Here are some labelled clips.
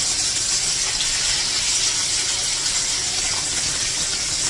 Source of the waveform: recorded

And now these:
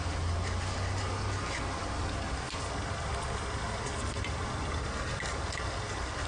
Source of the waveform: recorded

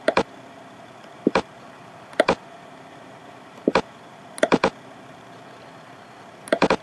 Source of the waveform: remade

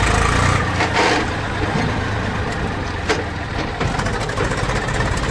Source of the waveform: recorded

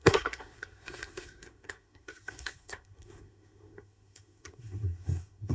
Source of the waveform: remade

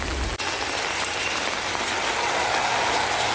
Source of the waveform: recorded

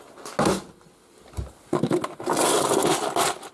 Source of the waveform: recorded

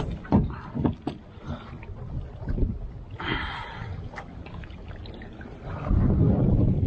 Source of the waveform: recorded